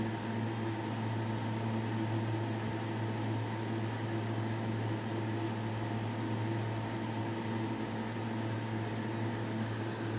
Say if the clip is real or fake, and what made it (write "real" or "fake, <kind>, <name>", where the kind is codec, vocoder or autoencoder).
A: real